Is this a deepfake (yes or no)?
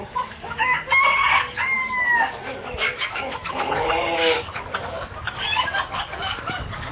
yes